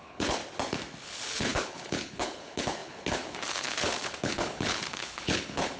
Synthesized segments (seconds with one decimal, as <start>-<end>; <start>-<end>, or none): 0.0-0.4; 1.0-5.8